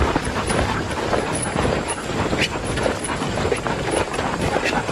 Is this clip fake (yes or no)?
yes